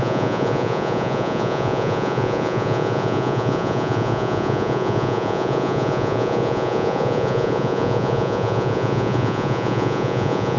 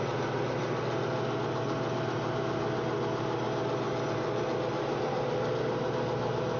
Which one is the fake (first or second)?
first